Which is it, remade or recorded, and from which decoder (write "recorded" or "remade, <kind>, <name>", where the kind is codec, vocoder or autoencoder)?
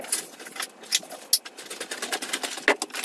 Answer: recorded